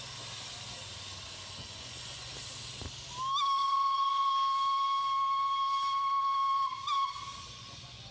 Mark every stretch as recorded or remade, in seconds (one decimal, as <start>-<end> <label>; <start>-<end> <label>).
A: 0.0-1.6 recorded; 1.6-2.3 remade; 2.3-3.6 recorded; 3.6-4.3 remade; 4.3-7.3 recorded; 7.3-8.1 remade